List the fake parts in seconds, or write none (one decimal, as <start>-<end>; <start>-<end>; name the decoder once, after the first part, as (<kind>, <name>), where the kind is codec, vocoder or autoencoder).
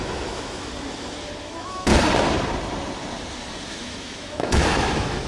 0.0-0.7 (autoencoder, DAC-VAE); 1.4-1.9; 3.7-5.3